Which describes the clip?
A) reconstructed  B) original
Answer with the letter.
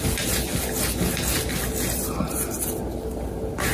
B